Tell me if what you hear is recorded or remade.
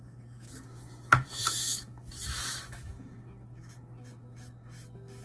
remade